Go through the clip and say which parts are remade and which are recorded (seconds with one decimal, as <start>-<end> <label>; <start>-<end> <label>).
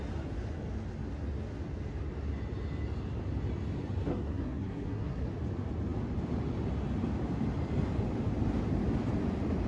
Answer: 0.0-4.1 recorded; 4.1-5.3 remade; 5.3-9.7 recorded